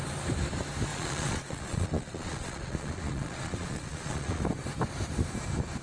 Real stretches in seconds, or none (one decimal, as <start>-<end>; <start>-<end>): 0.0-0.9; 4.4-5.8

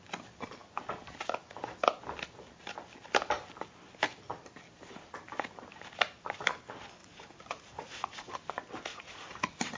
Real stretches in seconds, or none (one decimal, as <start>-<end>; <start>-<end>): 0.0-7.0; 8.3-8.9; 9.4-9.8